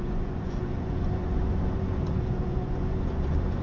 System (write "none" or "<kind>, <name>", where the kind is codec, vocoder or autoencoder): vocoder, Vocos